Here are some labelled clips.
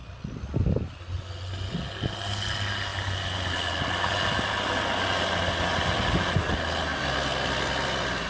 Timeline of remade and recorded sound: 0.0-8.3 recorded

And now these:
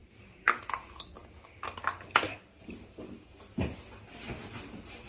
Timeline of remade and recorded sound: 0.0-0.6 remade; 0.6-5.1 recorded

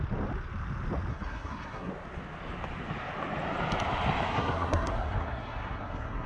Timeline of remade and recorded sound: 0.0-1.1 recorded; 1.1-1.9 remade; 1.9-4.3 recorded; 4.3-6.3 remade

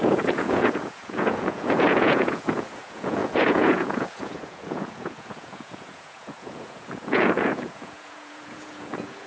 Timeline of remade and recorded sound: 0.0-9.3 remade

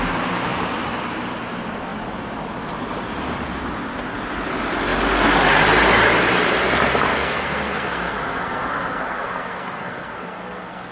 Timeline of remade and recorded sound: 0.0-7.1 recorded; 7.1-10.9 remade

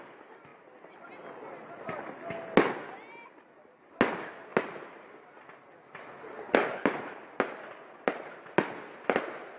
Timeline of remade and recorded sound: 0.0-9.6 recorded